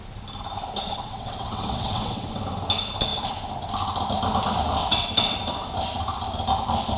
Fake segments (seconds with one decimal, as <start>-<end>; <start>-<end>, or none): 0.9-2.4; 4.8-5.4